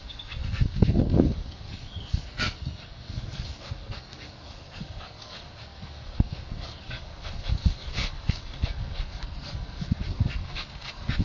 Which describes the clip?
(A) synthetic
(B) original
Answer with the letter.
A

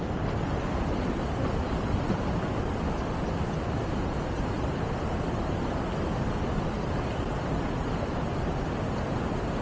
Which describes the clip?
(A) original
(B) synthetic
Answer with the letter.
A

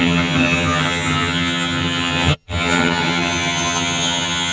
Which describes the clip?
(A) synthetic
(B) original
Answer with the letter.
A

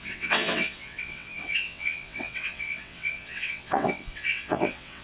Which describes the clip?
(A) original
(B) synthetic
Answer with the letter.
B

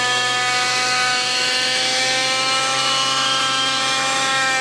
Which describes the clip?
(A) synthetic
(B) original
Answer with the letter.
A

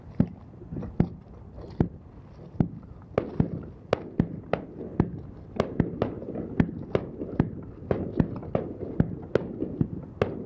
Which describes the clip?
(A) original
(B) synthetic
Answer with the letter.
A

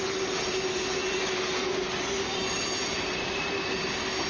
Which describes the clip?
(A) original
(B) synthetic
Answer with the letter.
A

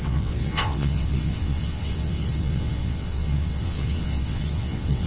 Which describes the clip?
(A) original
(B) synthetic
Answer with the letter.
B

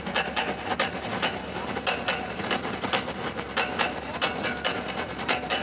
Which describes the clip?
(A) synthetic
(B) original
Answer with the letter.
B